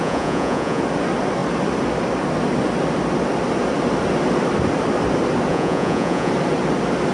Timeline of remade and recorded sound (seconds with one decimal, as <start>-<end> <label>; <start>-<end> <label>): 0.0-0.8 remade; 0.8-5.5 recorded; 5.5-6.3 remade; 6.3-7.1 recorded